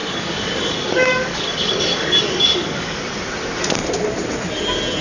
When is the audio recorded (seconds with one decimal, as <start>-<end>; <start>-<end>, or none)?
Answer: 3.0-5.0